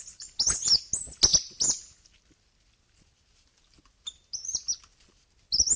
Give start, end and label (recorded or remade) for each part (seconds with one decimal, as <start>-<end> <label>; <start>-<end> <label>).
0.0-5.8 recorded